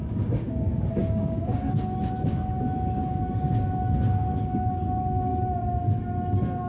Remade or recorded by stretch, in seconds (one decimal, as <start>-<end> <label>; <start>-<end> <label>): 0.0-5.3 remade; 5.3-6.0 recorded; 6.0-6.7 remade